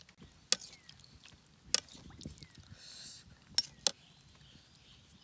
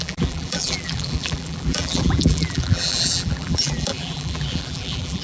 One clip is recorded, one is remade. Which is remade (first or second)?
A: second